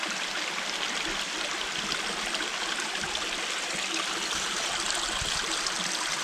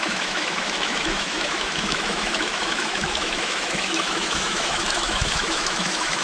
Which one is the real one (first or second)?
first